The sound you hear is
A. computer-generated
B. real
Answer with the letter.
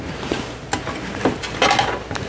B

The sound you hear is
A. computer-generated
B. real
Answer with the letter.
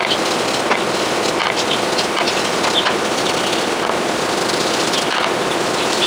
B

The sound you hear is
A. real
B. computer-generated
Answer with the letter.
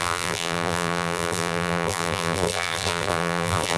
B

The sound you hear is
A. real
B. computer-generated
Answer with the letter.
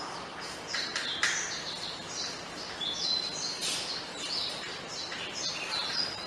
A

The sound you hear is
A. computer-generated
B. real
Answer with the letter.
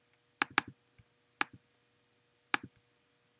B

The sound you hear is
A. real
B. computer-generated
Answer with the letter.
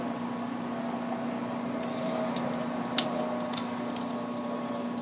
A